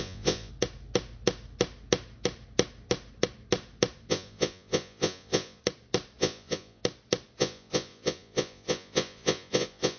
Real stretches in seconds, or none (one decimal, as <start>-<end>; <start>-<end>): 0.5-4.1; 5.6-6.2; 6.8-7.4